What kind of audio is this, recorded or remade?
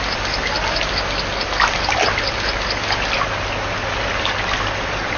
recorded